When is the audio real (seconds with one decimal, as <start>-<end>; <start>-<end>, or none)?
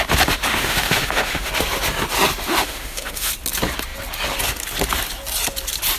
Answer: 0.0-0.5; 1.5-2.4; 3.3-6.0